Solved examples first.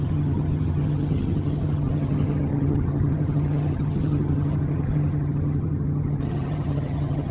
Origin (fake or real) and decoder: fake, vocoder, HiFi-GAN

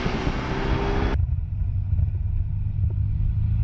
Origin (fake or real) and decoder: real